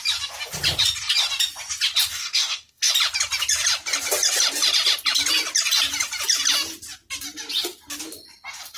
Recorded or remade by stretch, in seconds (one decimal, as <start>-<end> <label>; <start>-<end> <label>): 0.0-2.1 recorded; 2.1-2.9 remade; 2.9-8.8 recorded